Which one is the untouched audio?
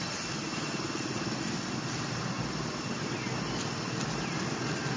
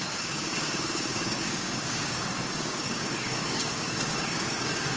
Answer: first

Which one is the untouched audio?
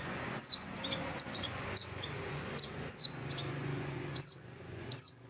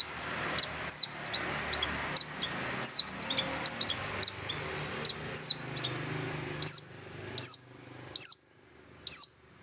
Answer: second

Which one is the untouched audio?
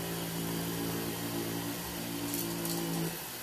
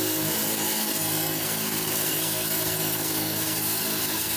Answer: first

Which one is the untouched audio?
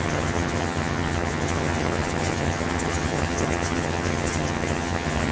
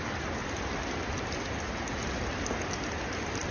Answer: second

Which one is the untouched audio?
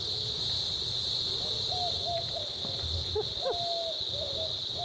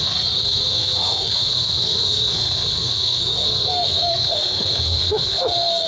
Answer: first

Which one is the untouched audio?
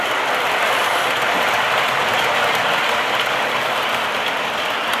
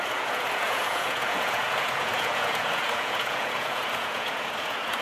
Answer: first